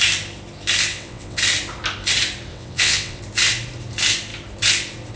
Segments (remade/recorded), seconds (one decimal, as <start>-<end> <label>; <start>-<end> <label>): 0.0-0.9 recorded; 0.9-1.4 remade; 1.4-2.5 recorded; 2.5-3.2 remade; 3.2-5.2 recorded